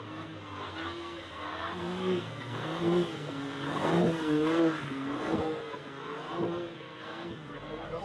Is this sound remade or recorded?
remade